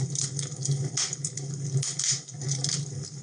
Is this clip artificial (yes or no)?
no